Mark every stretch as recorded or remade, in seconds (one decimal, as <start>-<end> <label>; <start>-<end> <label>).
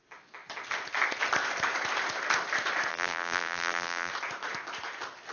0.0-2.9 recorded; 2.9-4.1 remade; 4.1-5.3 recorded